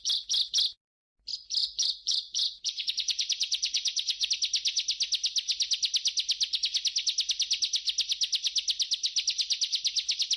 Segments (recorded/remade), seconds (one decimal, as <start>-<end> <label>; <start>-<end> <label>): 0.0-1.6 recorded; 1.6-4.3 remade; 4.3-10.4 recorded

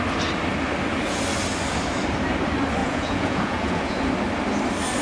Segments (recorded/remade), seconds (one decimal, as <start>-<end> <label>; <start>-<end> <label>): 0.0-2.8 recorded; 2.8-4.0 remade; 4.0-5.0 recorded

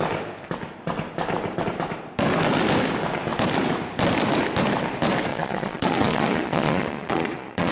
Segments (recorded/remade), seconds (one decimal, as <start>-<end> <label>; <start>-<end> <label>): 0.0-5.3 recorded; 5.3-7.7 remade

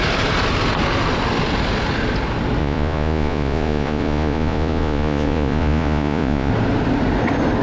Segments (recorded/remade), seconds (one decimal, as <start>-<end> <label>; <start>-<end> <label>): 0.0-2.6 recorded; 2.6-6.5 remade; 6.5-7.6 recorded

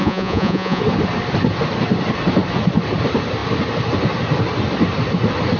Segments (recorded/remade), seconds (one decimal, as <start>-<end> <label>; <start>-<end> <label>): 0.0-0.8 remade; 0.8-5.6 recorded

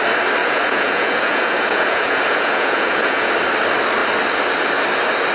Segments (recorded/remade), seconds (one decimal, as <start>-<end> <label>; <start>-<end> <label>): 0.0-0.4 recorded; 0.4-3.3 remade; 3.3-5.3 recorded